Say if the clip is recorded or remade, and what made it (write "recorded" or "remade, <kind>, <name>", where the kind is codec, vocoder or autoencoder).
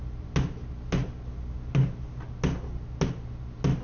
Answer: recorded